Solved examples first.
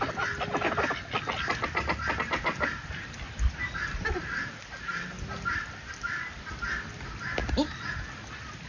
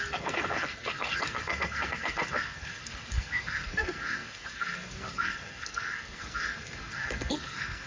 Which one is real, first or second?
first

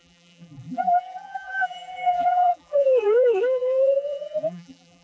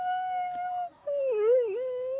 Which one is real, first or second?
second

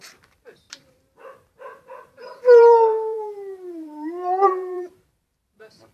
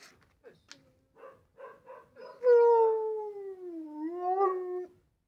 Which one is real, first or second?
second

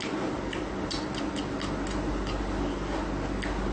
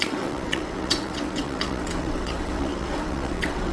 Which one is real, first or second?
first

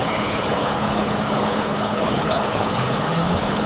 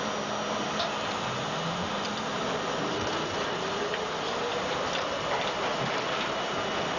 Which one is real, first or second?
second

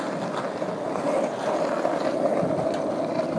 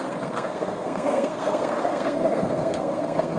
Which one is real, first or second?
first